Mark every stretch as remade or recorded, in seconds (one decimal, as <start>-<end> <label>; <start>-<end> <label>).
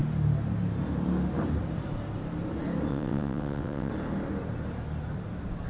0.0-2.9 recorded; 2.9-3.9 remade; 3.9-5.7 recorded